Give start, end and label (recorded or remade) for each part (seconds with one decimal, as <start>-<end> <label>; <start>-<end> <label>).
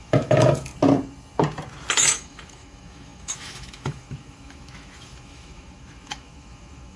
0.0-0.7 remade; 0.7-1.9 recorded; 1.9-7.0 remade